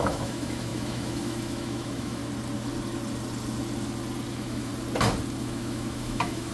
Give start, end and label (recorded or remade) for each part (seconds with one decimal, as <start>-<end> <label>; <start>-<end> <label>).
0.0-2.2 remade; 2.2-4.3 recorded; 4.3-4.7 remade; 4.7-5.4 recorded; 5.4-6.5 remade